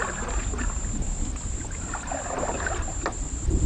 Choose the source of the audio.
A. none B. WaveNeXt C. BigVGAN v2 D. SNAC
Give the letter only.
A